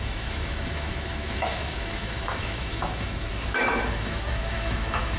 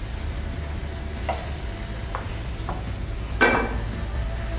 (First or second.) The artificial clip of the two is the first